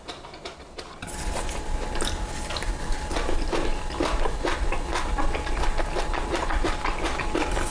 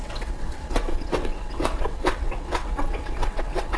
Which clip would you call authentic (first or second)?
first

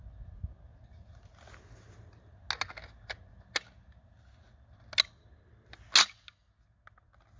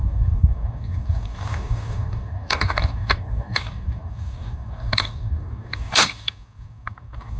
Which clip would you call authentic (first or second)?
first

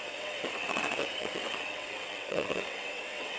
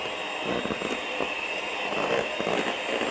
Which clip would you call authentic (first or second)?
second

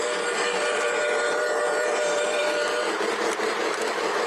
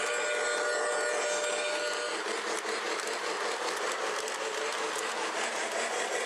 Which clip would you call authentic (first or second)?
second